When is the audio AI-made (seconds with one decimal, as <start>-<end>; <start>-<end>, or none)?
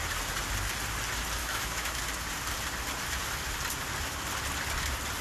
1.4-2.0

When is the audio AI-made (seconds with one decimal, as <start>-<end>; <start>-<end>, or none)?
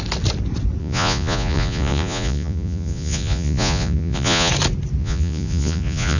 0.8-4.5; 5.0-6.2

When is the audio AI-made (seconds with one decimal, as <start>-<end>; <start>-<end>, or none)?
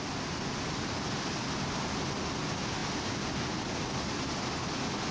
none